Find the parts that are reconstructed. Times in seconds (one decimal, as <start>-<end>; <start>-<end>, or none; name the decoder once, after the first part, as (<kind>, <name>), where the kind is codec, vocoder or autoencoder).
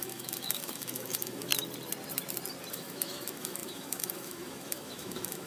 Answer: 0.0-1.5 (autoencoder, DAC-VAE); 2.7-5.5